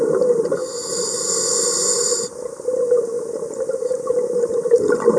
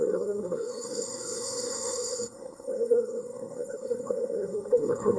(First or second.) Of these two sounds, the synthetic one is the second